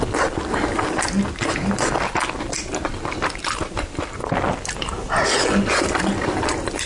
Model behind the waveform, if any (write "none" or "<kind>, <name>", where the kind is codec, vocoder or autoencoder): none